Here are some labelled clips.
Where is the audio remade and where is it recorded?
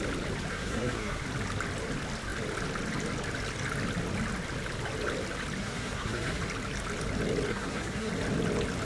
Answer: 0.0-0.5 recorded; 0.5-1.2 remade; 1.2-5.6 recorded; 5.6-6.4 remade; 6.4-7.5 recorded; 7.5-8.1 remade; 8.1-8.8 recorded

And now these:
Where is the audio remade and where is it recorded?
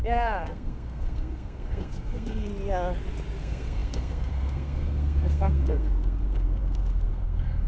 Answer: 0.0-2.5 remade; 2.5-3.4 recorded; 3.4-7.7 remade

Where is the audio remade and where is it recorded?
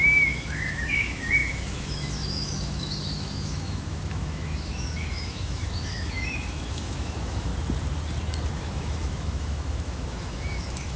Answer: 0.0-7.5 remade; 7.5-8.5 recorded; 8.5-11.0 remade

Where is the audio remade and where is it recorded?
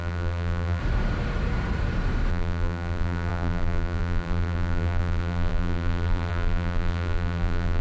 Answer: 0.0-0.8 remade; 0.8-2.3 recorded; 2.3-7.8 remade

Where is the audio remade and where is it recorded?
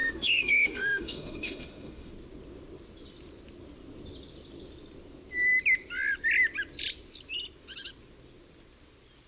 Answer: 0.0-2.1 remade; 2.1-9.3 recorded